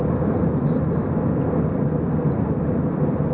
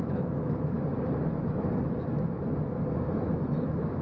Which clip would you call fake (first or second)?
second